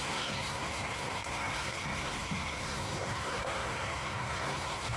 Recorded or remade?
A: remade